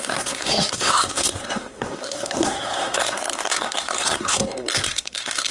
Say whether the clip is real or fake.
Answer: fake